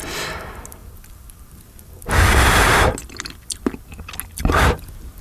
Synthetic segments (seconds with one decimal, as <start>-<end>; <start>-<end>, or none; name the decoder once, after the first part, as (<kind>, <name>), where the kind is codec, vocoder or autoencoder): none